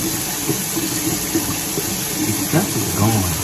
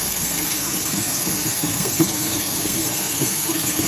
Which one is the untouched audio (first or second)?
first